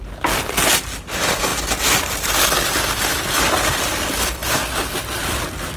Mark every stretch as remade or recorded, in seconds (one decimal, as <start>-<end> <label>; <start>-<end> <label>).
0.0-5.8 recorded

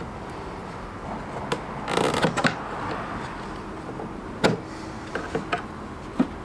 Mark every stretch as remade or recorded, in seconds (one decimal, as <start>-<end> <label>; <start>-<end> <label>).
0.0-6.4 recorded

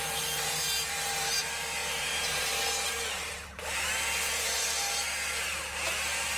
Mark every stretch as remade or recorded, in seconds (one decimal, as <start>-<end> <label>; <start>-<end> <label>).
0.0-6.4 remade